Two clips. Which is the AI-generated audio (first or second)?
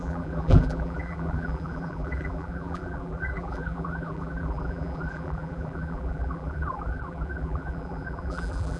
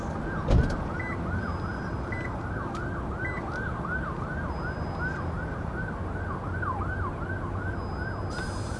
first